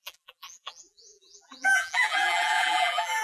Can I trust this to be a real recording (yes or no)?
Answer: no